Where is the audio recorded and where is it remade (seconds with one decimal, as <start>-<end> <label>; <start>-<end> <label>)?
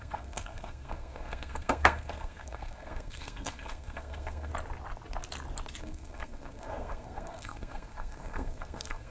0.0-4.5 remade; 4.5-5.8 recorded; 5.8-9.1 remade